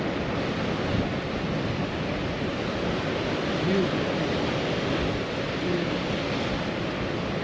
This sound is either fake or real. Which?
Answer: real